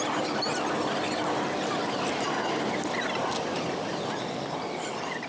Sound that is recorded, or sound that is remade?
recorded